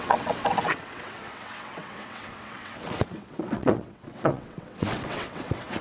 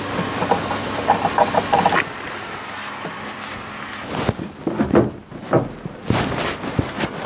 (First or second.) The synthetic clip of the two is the first